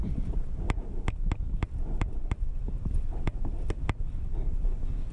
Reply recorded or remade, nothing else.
recorded